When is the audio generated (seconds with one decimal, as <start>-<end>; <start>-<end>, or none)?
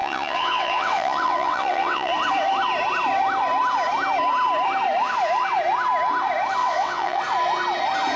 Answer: 0.0-2.1; 6.6-7.2